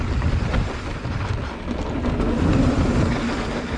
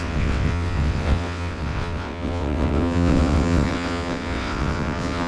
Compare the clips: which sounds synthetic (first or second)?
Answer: second